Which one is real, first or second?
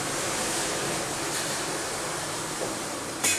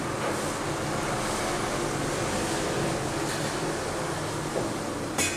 second